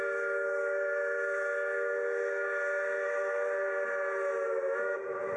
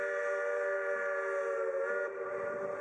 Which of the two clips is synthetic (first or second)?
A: first